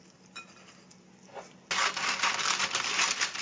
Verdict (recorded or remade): recorded